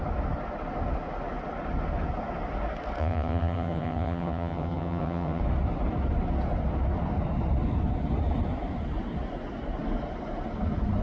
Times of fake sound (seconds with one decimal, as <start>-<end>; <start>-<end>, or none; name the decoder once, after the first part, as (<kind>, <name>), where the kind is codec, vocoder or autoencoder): 3.0-5.4 (vocoder, HiFi-GAN)